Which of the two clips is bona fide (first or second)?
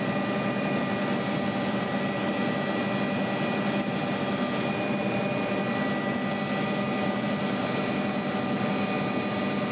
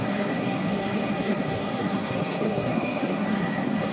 first